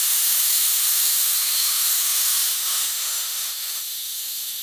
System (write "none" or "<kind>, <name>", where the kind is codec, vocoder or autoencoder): autoencoder, DAC-VAE